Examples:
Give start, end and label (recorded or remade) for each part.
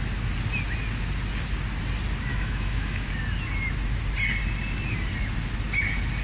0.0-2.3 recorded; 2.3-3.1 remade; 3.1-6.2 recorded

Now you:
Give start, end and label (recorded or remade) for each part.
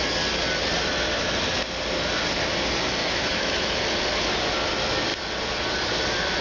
0.0-3.0 recorded; 3.0-3.8 remade; 3.8-6.4 recorded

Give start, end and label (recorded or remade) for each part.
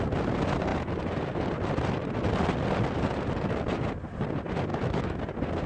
0.0-4.7 recorded; 4.7-5.2 remade; 5.2-5.7 recorded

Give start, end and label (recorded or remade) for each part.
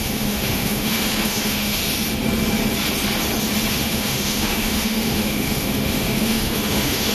0.0-1.8 remade; 1.8-3.7 recorded; 3.7-7.1 remade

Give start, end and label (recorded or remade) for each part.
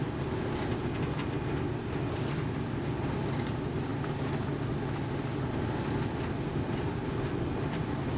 0.0-8.2 recorded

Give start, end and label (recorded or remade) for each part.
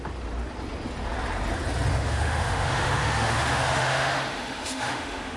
0.0-1.9 recorded; 1.9-5.4 remade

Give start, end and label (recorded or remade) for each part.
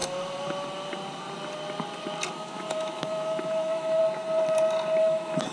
0.0-2.3 recorded; 2.3-4.0 remade; 4.0-5.0 recorded; 5.0-5.5 remade